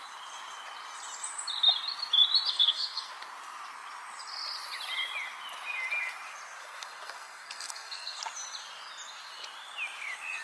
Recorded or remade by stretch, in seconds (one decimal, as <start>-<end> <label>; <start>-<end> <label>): 0.0-2.5 recorded; 2.5-3.1 remade; 3.1-6.6 recorded; 6.6-8.2 remade; 8.2-10.4 recorded